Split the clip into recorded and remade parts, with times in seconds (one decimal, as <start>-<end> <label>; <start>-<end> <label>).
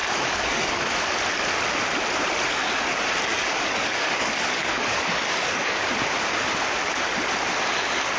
0.0-0.9 remade; 0.9-3.3 recorded; 3.3-5.8 remade; 5.8-8.2 recorded